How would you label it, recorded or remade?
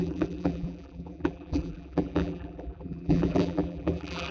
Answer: remade